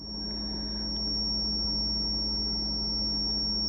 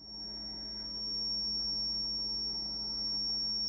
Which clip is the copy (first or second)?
second